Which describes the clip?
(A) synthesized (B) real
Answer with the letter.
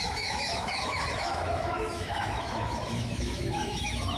A